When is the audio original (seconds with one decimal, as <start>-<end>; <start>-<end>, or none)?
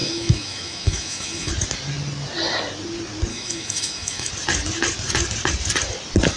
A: 1.5-3.3; 4.3-6.4